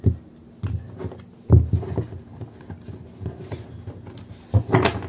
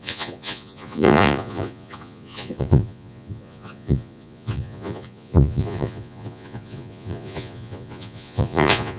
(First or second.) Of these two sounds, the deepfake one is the second